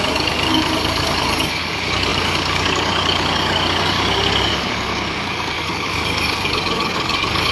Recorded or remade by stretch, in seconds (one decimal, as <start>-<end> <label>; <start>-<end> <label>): 0.0-7.5 remade